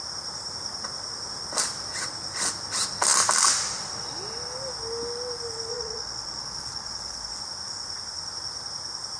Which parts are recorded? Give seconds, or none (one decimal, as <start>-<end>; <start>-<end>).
0.0-5.7; 7.3-9.2